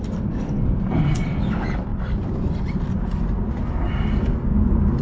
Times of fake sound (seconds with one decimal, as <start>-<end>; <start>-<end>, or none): none